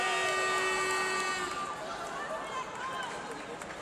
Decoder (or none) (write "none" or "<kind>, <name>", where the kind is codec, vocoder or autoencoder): none